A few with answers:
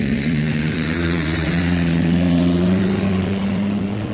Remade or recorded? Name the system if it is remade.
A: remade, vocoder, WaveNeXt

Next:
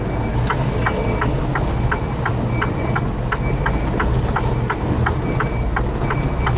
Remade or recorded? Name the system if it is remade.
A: recorded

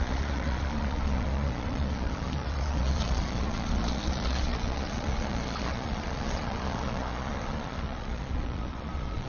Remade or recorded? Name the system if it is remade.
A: remade, vocoder, Vocos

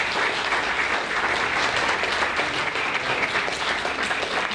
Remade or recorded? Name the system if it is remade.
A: recorded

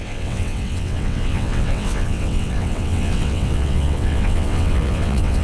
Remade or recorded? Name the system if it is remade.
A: remade, vocoder, WaveNeXt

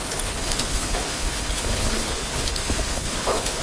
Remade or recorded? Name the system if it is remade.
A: remade, codec, HILCodec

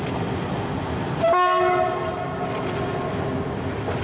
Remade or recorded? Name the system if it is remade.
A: recorded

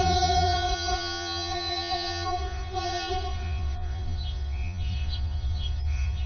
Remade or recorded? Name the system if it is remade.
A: remade, vocoder, Vocos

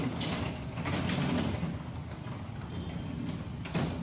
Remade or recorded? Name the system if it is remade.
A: recorded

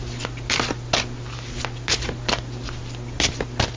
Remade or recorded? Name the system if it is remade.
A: recorded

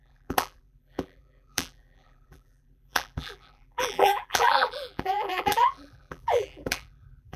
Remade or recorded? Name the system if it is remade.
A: remade, vocoder, BigVGAN v2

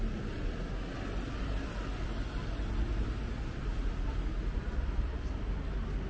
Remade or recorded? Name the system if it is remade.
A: recorded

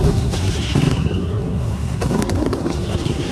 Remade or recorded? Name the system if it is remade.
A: remade, codec, SNAC